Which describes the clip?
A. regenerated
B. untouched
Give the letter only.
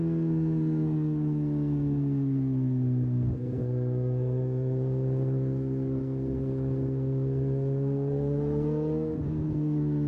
A